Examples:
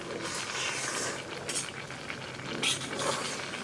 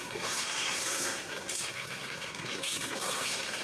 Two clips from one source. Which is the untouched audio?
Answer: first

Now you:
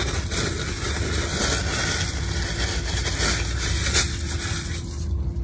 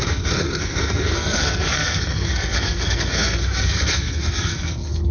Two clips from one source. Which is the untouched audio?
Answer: first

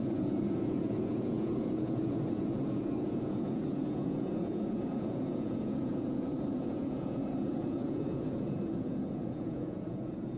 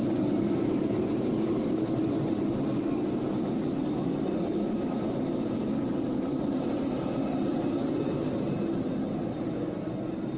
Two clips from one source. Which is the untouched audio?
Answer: second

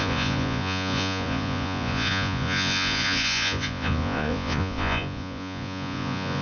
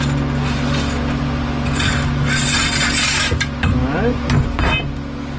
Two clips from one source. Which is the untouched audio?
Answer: second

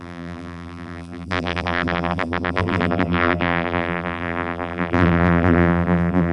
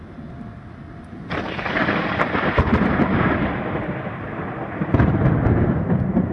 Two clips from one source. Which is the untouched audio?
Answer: second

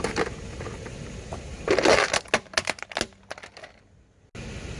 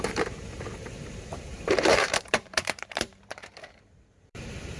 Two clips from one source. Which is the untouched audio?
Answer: first